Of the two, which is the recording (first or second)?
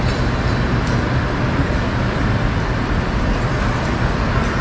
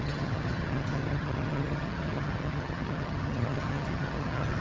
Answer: first